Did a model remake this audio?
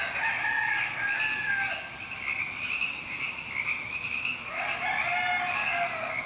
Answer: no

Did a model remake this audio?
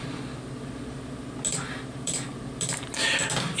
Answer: no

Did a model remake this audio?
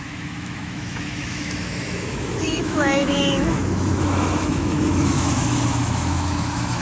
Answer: yes